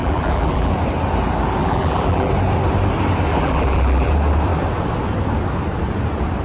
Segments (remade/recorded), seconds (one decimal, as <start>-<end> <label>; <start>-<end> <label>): 0.0-0.7 remade; 0.7-1.6 recorded; 1.6-2.3 remade; 2.3-3.3 recorded; 3.3-4.1 remade; 4.1-6.4 recorded